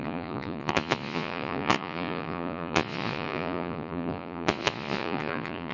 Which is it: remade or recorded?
remade